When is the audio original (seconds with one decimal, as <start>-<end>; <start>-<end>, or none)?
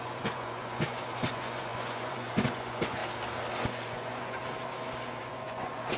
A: 3.0-3.6; 4.4-5.2